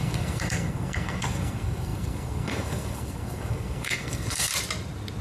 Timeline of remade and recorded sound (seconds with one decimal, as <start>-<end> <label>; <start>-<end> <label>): 0.0-4.5 remade; 4.5-5.2 recorded